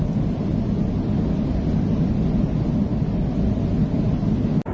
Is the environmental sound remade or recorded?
recorded